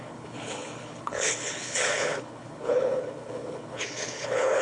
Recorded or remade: remade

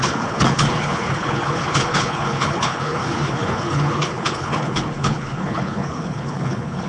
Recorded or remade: remade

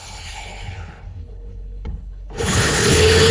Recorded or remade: remade